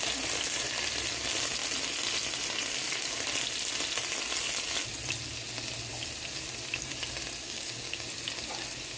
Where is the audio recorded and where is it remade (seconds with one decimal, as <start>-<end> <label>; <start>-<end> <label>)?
0.0-7.4 recorded; 7.4-8.1 remade; 8.1-9.0 recorded